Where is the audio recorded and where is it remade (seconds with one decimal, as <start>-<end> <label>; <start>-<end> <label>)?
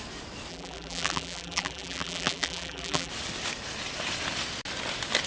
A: 0.0-0.5 recorded; 0.5-3.1 remade; 3.1-5.3 recorded